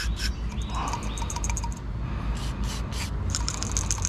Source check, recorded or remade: recorded